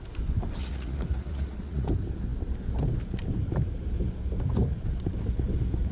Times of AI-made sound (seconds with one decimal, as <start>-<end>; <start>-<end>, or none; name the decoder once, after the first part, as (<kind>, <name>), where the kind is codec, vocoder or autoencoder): 0.6-1.9 (vocoder, Vocos)